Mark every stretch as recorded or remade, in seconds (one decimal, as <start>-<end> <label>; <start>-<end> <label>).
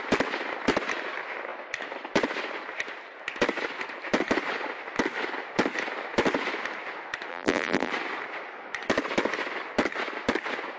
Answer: 0.0-7.3 recorded; 7.3-7.9 remade; 7.9-10.8 recorded